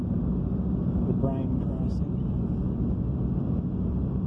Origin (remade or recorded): recorded